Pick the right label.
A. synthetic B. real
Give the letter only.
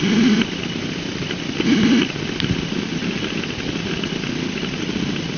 B